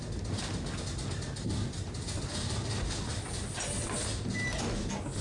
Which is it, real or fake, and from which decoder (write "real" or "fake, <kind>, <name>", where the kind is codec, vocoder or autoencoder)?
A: real